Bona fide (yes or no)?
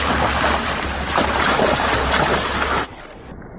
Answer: yes